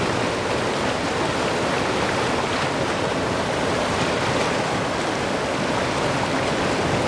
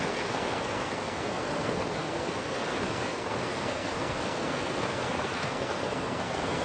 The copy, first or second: second